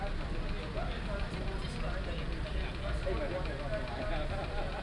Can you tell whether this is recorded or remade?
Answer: recorded